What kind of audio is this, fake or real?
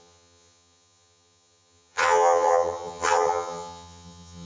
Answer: fake